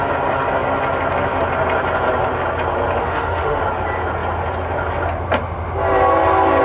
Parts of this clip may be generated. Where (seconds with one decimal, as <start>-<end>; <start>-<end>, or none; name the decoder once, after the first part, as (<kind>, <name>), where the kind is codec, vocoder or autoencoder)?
3.0-3.6 (autoencoder, DAC-VAE)